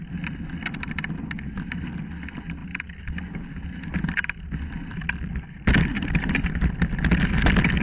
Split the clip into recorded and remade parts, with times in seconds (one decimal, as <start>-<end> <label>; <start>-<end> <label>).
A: 0.0-7.8 recorded